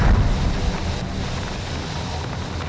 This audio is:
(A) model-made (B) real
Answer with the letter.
B